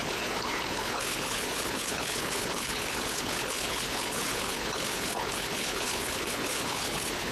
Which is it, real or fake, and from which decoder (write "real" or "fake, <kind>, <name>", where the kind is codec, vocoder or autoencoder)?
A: fake, codec, HILCodec